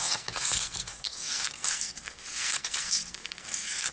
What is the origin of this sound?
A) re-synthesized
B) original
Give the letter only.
A